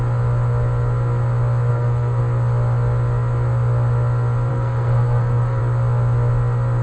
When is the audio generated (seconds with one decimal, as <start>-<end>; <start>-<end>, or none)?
1.7-2.2; 4.5-5.6